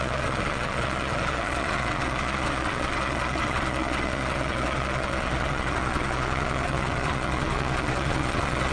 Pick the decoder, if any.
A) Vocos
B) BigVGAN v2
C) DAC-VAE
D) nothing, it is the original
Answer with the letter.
A